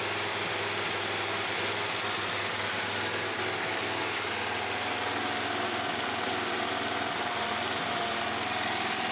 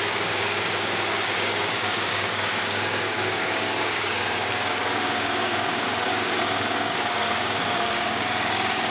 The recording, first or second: first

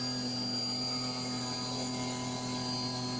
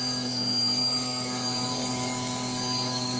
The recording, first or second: first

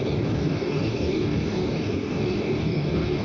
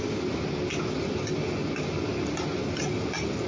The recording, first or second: second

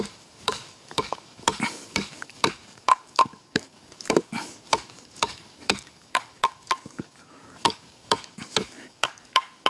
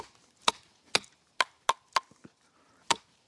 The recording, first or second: second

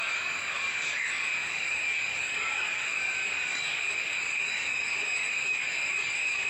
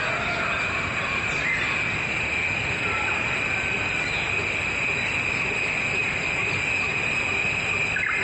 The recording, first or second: second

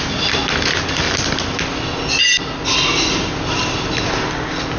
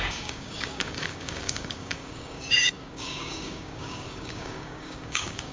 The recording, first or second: first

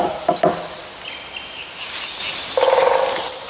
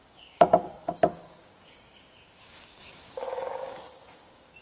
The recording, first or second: first